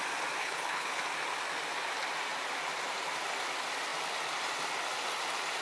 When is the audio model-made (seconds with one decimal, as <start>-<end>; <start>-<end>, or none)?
0.4-1.0